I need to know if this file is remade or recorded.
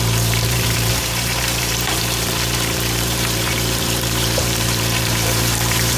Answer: remade